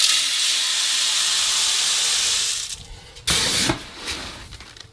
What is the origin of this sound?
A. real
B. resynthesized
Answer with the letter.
A